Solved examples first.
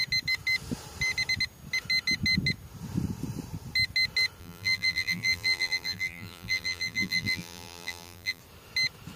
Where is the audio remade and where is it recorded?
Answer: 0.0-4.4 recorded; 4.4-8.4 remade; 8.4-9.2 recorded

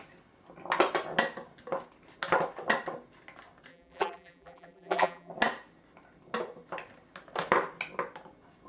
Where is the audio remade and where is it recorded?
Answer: 0.0-3.7 recorded; 3.7-5.3 remade; 5.3-8.7 recorded

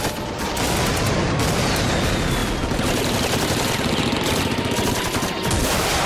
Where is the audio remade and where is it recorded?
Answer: 0.0-6.0 recorded

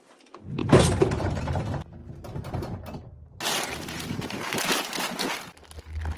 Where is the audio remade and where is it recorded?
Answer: 0.0-0.6 recorded; 0.6-1.4 remade; 1.4-2.0 recorded; 2.0-4.7 remade; 4.7-6.2 recorded

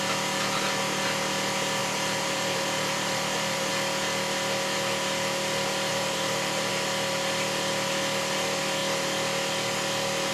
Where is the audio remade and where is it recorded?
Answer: 0.0-1.8 recorded; 1.8-3.7 remade; 3.7-5.9 recorded; 5.9-6.7 remade; 6.7-10.3 recorded

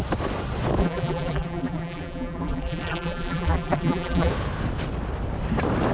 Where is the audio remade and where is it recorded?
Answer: 0.0-0.8 recorded; 0.8-4.3 remade; 4.3-5.9 recorded